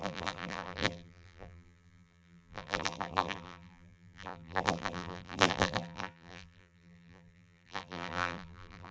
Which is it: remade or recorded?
remade